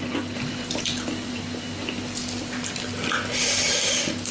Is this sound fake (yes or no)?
no